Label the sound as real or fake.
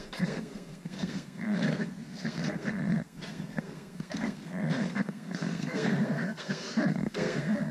fake